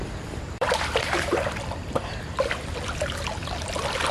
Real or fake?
fake